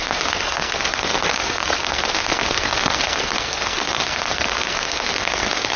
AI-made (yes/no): yes